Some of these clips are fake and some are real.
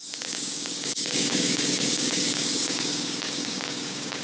fake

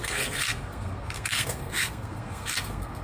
fake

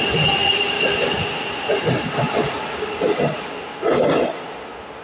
real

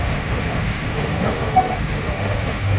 fake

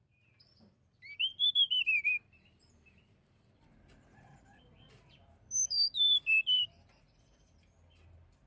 fake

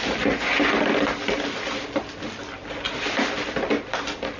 real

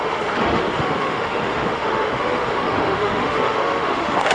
fake